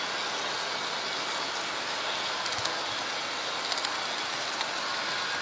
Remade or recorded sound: recorded